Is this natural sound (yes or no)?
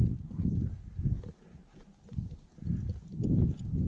yes